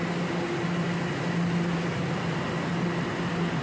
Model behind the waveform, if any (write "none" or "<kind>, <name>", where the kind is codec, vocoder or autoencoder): none